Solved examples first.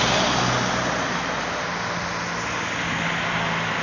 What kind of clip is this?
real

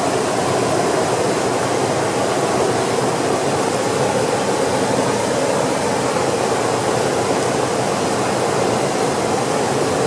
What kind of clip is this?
real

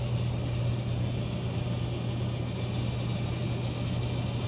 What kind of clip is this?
real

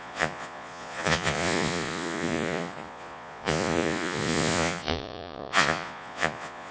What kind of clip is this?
fake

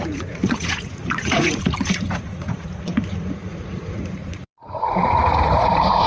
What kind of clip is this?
fake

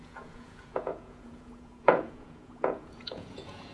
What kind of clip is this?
fake